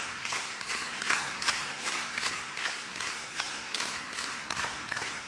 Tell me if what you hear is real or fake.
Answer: fake